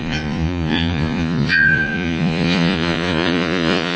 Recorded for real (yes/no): no